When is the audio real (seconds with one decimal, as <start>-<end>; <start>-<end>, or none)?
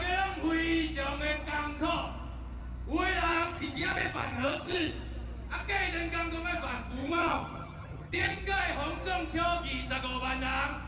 0.0-3.3; 4.9-7.0; 8.4-10.9